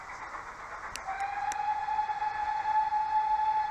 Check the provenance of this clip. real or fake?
real